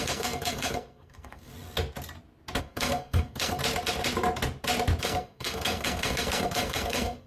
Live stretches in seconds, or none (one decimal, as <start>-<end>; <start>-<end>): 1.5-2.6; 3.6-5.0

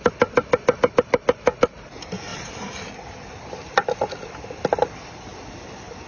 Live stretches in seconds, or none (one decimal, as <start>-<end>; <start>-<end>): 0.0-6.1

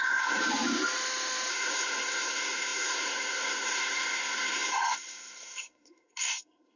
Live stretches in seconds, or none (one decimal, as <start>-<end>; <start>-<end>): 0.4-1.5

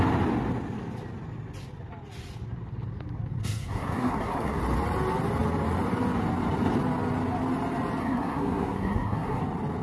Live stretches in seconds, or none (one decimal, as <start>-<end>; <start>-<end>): 0.0-3.4; 4.6-8.0; 9.4-9.8